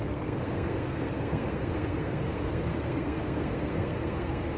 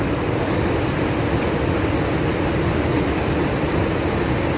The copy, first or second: first